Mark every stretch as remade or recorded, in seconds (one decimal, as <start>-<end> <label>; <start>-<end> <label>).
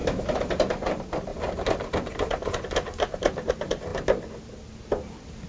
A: 0.0-5.5 recorded